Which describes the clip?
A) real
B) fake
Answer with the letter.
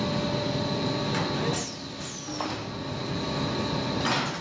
A